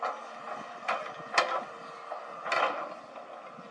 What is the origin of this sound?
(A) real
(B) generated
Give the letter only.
A